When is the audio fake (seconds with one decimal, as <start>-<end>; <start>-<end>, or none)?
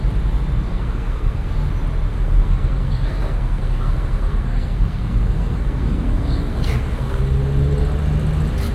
0.7-1.5; 2.1-7.2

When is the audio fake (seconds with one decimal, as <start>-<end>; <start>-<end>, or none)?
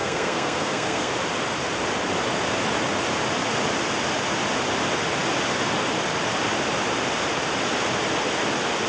0.0-1.1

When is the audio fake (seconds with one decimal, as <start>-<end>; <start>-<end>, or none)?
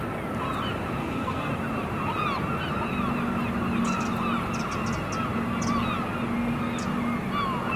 1.0-1.5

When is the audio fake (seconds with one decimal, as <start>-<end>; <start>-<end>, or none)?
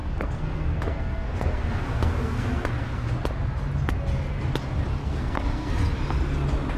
0.0-3.1; 5.0-5.7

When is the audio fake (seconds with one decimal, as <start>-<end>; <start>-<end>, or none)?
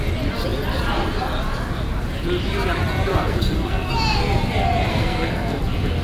3.1-3.9; 4.9-5.6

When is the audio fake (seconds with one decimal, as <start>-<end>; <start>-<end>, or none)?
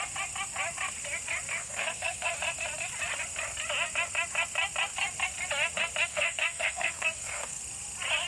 1.6-2.3; 6.1-7.6